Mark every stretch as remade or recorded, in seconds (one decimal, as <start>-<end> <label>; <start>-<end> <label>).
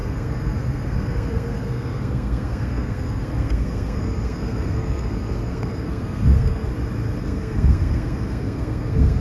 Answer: 0.0-6.7 remade; 6.7-7.2 recorded; 7.2-9.2 remade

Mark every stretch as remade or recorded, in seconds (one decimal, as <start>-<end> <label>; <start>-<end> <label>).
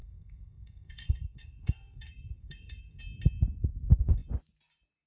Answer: 0.0-3.0 remade; 3.0-5.1 recorded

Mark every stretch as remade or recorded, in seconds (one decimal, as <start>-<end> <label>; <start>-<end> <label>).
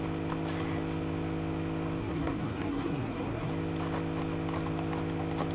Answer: 0.0-2.0 recorded; 2.0-3.5 remade; 3.5-5.5 recorded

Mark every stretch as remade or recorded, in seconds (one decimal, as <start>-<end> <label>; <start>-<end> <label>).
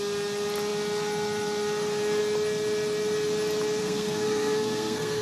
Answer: 0.0-3.8 recorded; 3.8-5.2 remade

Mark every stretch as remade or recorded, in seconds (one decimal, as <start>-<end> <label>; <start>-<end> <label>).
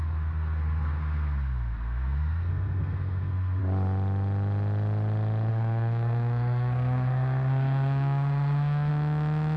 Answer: 0.0-3.6 remade; 3.6-5.5 recorded; 5.5-8.9 remade; 8.9-9.6 recorded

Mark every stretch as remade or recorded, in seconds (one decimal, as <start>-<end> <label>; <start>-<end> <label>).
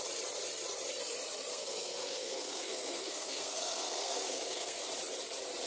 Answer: 0.0-1.5 recorded; 1.5-4.9 remade; 4.9-5.7 recorded